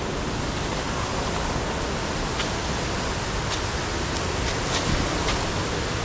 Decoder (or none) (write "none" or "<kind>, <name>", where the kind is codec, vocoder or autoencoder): none